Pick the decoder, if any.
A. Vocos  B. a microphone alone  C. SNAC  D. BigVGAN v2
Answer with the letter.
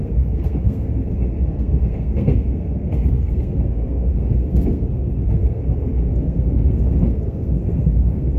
C